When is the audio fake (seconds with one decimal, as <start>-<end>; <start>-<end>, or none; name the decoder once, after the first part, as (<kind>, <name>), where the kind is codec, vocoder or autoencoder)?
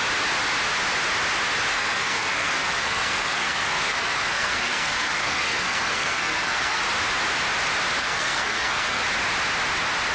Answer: 1.7-6.8 (codec, SNAC); 8.0-9.0